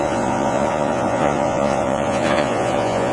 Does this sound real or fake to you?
fake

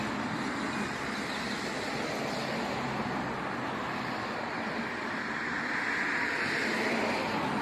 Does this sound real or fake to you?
real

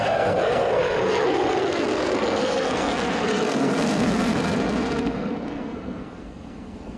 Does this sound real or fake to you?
fake